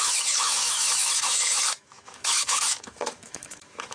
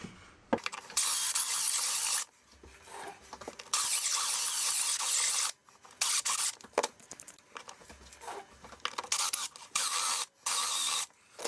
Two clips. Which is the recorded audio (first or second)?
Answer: second